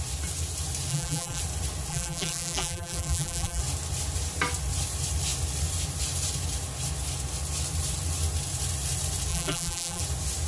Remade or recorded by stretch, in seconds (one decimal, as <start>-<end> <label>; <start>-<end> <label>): 0.0-0.9 recorded; 0.9-1.4 remade; 1.4-1.9 recorded; 1.9-3.6 remade; 3.6-9.3 recorded; 9.3-10.0 remade; 10.0-10.5 recorded